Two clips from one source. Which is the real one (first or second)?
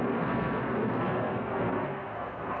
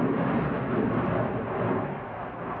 second